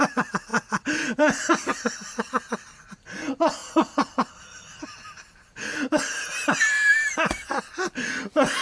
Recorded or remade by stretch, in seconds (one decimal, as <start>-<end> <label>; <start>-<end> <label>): 0.0-8.6 recorded